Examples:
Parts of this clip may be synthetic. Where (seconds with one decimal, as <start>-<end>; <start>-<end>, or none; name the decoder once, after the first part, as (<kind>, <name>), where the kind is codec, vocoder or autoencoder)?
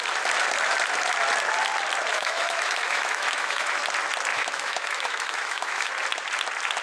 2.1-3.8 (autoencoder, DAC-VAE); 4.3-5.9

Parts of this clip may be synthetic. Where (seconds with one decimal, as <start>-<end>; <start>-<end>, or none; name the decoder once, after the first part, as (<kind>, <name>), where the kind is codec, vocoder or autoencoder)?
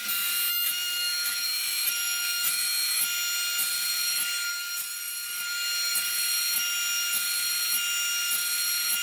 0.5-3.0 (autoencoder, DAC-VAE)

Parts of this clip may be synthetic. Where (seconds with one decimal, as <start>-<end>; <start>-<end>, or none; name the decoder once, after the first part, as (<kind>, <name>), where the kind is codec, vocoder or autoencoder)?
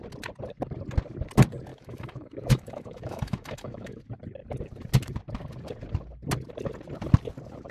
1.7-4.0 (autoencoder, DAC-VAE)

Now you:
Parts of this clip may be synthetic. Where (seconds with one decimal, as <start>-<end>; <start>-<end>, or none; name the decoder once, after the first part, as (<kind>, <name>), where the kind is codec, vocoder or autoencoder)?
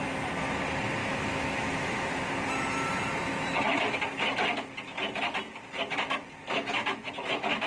1.0-2.3 (autoencoder, DAC-VAE)